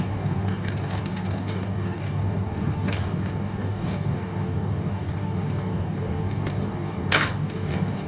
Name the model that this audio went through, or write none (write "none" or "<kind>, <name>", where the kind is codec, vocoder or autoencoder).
codec, DAC